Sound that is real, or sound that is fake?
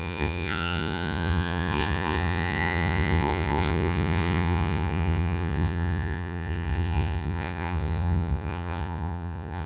fake